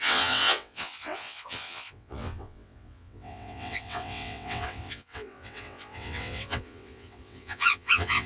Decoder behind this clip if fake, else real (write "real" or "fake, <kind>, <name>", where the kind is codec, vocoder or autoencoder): fake, vocoder, WaveNeXt